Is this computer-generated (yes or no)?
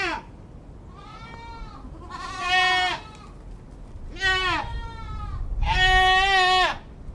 no